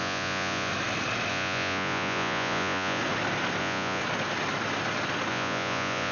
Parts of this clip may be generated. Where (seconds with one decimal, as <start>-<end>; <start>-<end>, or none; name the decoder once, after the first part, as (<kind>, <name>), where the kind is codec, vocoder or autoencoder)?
0.0-0.7 (vocoder, Vocos); 1.3-3.0; 3.6-4.0; 5.3-6.1